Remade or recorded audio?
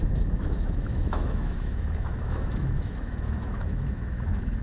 remade